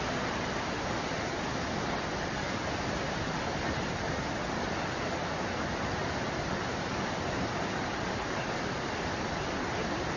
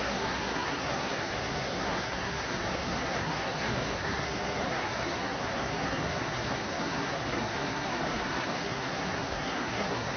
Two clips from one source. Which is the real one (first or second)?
first